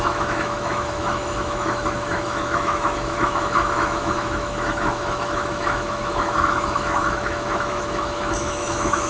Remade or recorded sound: remade